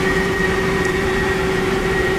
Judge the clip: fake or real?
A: fake